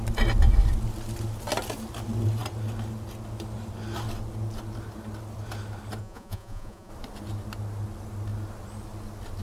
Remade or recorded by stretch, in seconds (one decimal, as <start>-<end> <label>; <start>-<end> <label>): 0.0-6.0 recorded; 6.0-6.9 remade; 6.9-9.4 recorded